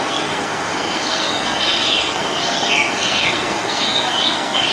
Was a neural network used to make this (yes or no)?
yes